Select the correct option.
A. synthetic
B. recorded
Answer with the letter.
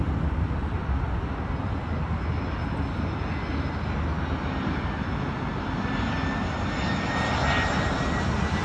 B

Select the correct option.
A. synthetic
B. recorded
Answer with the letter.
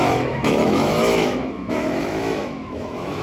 A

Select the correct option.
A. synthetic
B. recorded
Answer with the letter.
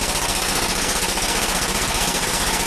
A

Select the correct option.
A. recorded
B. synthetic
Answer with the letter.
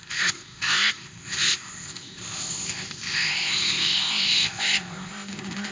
B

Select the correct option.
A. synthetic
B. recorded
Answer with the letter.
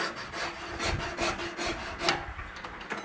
B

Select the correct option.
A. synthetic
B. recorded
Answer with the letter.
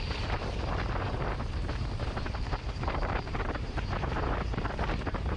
A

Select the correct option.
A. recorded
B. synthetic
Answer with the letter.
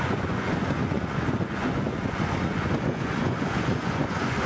B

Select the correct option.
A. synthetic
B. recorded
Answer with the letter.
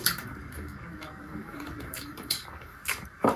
A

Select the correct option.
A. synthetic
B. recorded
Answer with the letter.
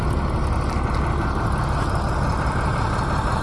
B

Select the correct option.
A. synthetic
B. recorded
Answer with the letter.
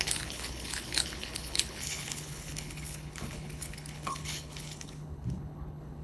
A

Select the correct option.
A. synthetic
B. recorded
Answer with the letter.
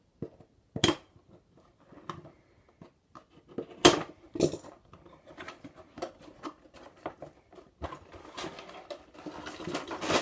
B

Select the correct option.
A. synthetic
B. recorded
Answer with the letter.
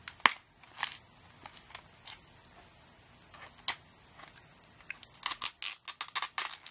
B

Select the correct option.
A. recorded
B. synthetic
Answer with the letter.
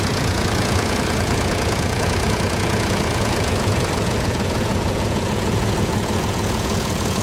B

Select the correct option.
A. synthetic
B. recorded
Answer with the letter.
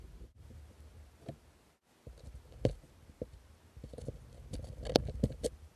B